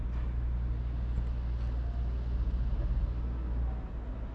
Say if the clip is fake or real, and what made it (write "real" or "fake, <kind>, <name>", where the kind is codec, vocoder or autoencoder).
real